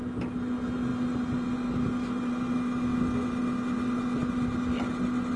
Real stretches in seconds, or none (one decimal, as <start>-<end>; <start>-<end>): 0.0-5.4